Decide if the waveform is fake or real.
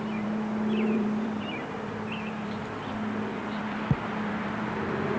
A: fake